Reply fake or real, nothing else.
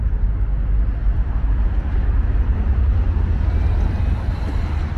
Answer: fake